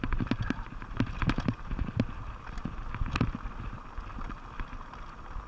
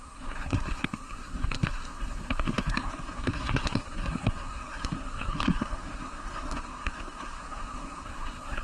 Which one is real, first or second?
first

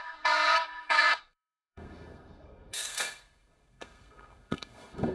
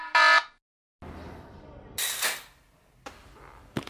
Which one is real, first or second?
second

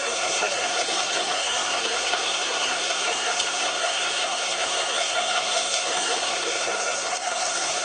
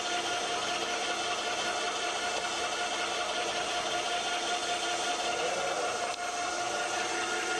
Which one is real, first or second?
second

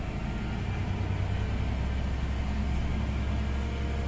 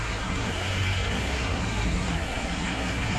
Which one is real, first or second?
first